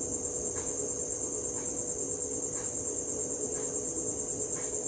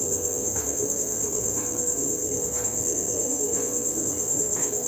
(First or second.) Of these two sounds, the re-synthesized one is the second